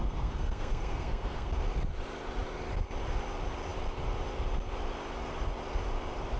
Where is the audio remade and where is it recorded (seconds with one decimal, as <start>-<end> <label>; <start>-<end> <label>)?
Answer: 0.0-1.5 remade; 1.5-6.4 recorded